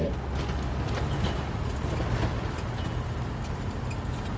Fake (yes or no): no